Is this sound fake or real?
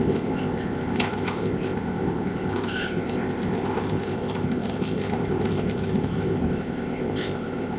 fake